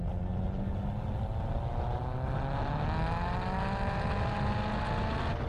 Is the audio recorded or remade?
recorded